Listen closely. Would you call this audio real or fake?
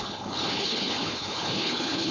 fake